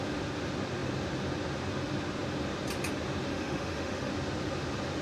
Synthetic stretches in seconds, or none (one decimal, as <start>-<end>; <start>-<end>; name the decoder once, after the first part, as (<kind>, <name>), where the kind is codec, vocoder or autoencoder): 3.3-4.1 (autoencoder, DAC-VAE)